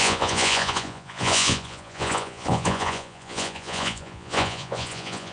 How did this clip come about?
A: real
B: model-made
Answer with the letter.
B